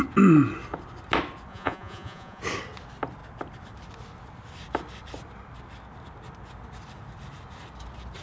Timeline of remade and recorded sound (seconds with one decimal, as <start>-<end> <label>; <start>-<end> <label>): 0.0-1.5 recorded; 1.5-2.4 remade; 2.4-8.2 recorded